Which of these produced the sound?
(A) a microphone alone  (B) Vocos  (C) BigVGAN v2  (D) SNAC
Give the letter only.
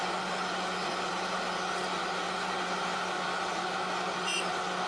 A